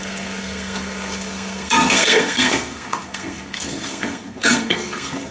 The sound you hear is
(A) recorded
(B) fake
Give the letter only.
B